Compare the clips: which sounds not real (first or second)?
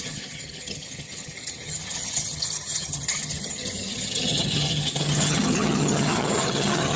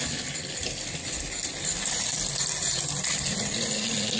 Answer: first